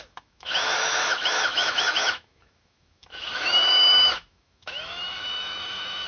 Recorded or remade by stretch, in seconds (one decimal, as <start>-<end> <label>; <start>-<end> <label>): 0.0-6.1 remade

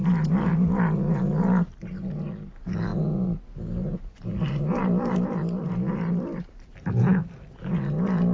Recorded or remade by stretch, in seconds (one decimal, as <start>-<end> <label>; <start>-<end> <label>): 0.0-8.3 recorded

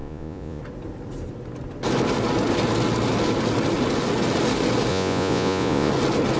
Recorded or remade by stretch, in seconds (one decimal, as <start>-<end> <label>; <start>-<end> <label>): 0.0-0.6 remade; 0.6-4.9 recorded; 4.9-5.9 remade; 5.9-6.4 recorded

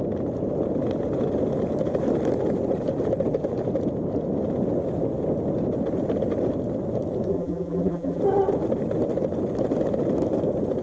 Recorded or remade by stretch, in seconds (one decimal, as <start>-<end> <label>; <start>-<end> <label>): 0.0-7.3 recorded; 7.3-8.2 remade; 8.2-10.8 recorded

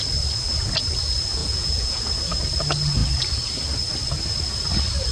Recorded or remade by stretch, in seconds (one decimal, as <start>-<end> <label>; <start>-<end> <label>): 0.0-1.4 recorded; 1.4-2.1 remade; 2.1-5.1 recorded

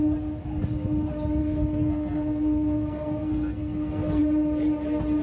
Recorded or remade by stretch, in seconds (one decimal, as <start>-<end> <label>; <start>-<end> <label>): 0.0-1.4 recorded; 1.4-4.2 remade; 4.2-5.2 recorded

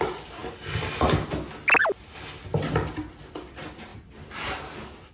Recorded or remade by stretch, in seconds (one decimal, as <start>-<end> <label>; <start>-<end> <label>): 0.0-5.1 recorded

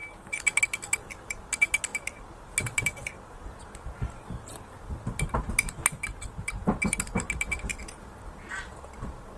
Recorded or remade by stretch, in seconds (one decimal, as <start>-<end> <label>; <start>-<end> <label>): 0.0-9.4 recorded